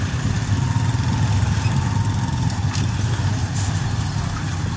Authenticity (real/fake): real